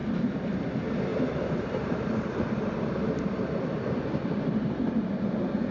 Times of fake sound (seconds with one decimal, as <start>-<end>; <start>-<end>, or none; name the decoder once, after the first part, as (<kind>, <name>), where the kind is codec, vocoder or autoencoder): 1.1-2.5 (vocoder, BigVGAN v2)